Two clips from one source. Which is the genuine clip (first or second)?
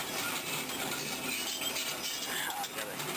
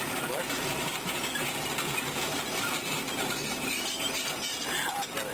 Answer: first